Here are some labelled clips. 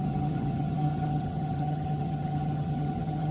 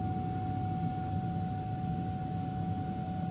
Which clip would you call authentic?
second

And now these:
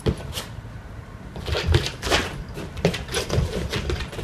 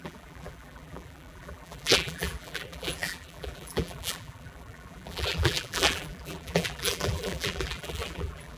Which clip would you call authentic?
first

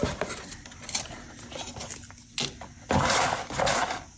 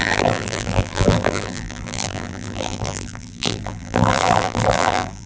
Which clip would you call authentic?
first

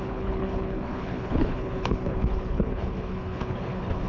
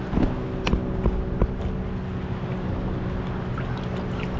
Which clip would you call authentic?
second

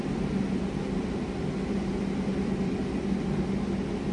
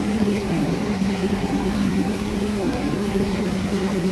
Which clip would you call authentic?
first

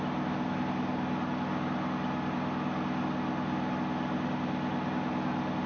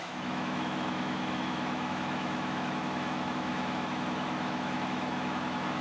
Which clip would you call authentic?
first